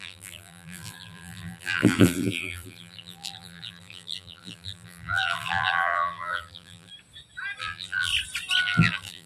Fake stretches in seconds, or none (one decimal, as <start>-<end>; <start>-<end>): 0.0-6.9; 7.6-8.1; 8.6-9.3